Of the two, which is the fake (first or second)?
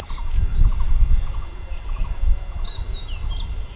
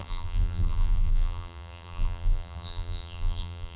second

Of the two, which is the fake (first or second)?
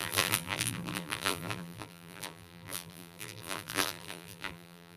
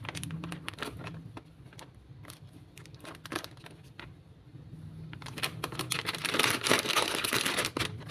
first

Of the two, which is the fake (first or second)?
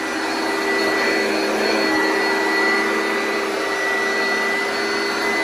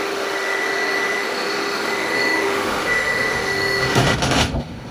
second